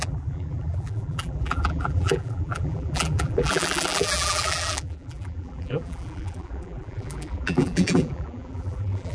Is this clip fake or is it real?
fake